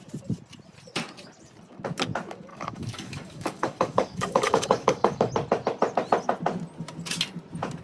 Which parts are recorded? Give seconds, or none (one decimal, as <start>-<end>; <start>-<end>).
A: 0.0-2.5; 5.3-7.8